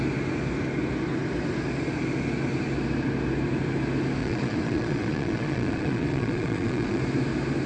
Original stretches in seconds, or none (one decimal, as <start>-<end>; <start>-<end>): 0.0-4.2; 7.0-7.7